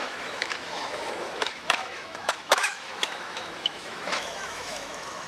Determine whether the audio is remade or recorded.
remade